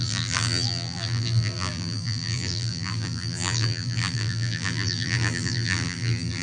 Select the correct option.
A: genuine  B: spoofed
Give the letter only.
B